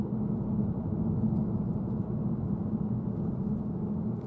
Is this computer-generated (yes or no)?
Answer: no